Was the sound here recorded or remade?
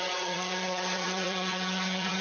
remade